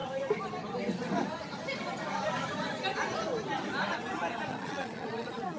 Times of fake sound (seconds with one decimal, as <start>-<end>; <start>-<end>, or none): 4.5-5.6